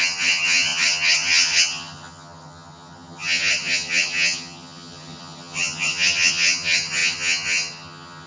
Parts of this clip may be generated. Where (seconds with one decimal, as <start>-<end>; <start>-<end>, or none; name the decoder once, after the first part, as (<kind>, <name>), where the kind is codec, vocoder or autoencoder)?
0.0-8.3 (vocoder, HiFi-GAN)